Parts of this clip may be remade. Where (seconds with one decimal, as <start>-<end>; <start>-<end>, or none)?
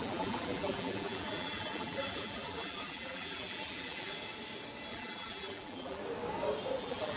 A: 0.0-4.1; 4.9-6.0; 6.8-7.2